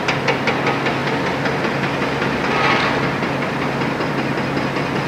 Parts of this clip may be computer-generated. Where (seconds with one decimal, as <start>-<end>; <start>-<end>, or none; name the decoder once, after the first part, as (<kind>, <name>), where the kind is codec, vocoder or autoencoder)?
none

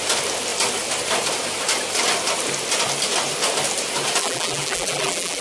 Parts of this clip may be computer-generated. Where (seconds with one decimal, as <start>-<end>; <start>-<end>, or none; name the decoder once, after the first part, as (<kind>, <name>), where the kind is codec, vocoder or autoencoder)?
4.2-5.4 (vocoder, BigVGAN v2)

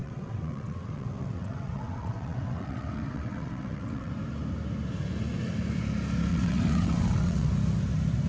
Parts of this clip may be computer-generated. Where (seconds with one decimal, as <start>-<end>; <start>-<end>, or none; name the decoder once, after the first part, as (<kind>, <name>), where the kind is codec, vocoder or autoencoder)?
0.0-4.1 (vocoder, WaveNeXt); 6.3-7.5

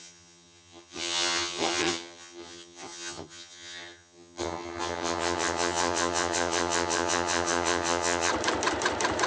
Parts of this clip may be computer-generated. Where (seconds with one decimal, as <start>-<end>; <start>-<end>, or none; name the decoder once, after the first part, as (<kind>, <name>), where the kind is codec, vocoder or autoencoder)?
0.0-8.3 (vocoder, HiFi-GAN)

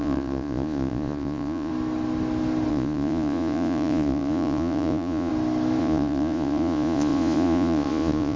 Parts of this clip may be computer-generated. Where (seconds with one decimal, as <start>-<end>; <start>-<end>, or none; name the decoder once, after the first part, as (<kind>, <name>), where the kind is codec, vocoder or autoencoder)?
0.0-1.7 (vocoder, Vocos); 2.7-5.3; 5.8-8.4